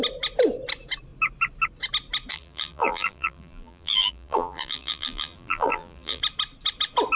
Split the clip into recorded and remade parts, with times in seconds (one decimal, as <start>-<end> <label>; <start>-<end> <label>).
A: 0.0-2.3 recorded; 2.3-6.2 remade; 6.2-7.2 recorded